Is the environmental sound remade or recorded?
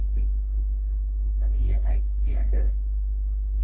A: remade